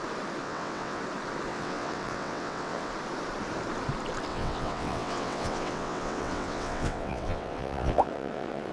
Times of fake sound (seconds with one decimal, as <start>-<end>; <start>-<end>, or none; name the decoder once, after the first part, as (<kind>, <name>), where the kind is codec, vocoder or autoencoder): 0.4-1.0 (vocoder, WaveNeXt); 1.5-2.9; 4.3-8.7